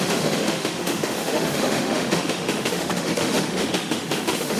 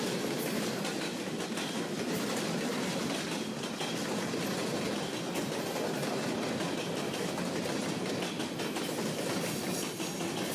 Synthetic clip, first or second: first